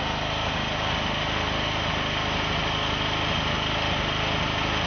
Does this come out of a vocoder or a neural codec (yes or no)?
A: no